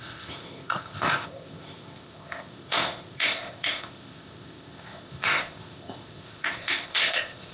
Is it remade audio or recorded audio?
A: remade